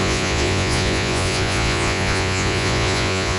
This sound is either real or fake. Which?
fake